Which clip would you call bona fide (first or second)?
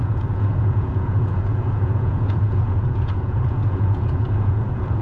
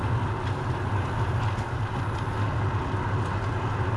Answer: second